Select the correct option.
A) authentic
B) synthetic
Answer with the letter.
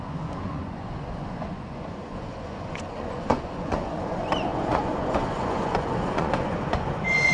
B